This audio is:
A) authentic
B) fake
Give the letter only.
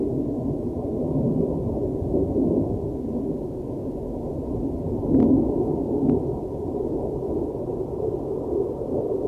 A